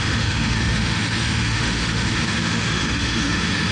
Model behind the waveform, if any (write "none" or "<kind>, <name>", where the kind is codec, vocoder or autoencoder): autoencoder, DAC-VAE